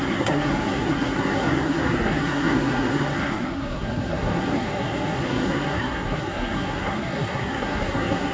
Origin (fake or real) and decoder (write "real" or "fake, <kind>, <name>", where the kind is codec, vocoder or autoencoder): fake, codec, SNAC